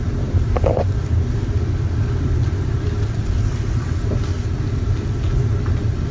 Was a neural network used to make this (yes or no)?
no